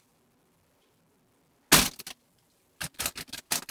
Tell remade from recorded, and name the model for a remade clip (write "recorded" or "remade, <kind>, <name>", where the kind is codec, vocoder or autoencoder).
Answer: recorded